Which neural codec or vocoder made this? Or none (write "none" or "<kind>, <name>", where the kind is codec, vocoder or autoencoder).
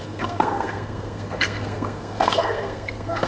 codec, SNAC